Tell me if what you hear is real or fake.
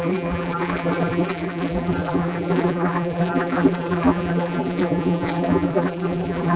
fake